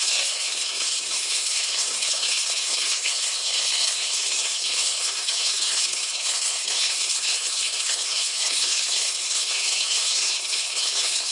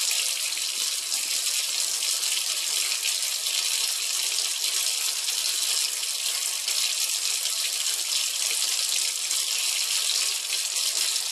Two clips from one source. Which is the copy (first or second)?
first